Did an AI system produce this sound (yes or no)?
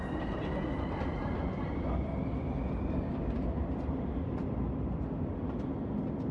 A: no